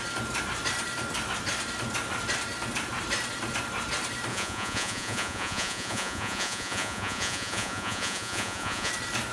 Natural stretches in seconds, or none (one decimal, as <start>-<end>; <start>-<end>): 0.0-4.3; 8.9-9.3